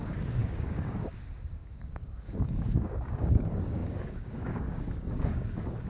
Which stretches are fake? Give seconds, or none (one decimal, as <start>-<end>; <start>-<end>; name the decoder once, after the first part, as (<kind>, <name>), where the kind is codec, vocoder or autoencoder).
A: 0.0-5.9 (codec, DAC)